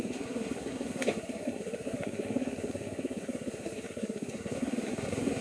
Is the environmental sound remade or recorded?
remade